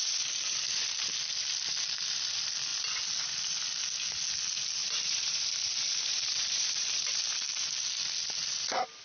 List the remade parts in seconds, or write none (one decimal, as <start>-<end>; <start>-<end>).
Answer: 4.8-7.3